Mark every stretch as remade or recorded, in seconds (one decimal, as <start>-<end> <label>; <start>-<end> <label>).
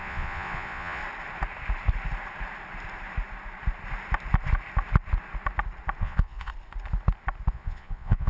0.0-1.0 remade; 1.0-6.0 recorded; 6.0-6.5 remade; 6.5-7.5 recorded; 7.5-8.3 remade